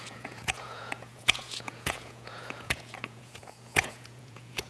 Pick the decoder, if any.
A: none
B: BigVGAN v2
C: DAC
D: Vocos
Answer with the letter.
D